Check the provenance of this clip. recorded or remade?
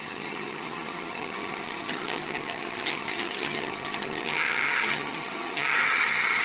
remade